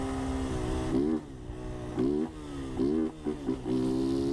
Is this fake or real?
real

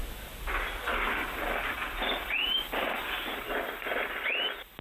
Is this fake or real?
real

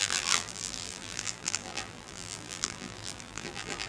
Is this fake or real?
fake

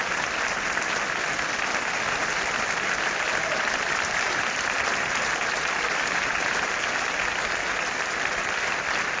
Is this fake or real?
real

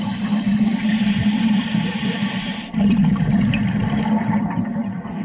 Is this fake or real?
fake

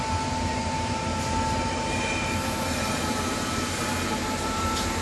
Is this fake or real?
fake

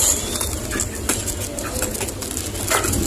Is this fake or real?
real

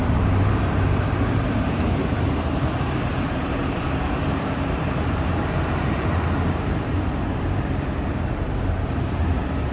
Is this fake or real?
fake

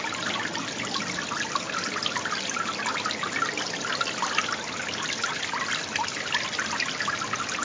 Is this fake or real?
real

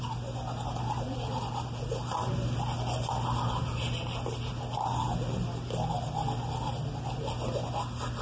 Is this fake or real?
real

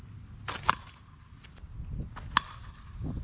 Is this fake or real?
real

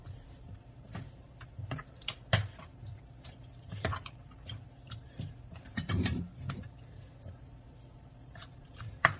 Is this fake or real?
fake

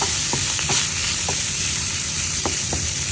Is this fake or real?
fake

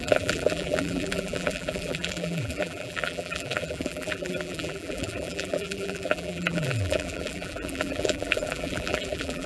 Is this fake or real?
fake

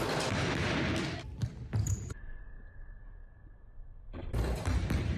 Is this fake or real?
real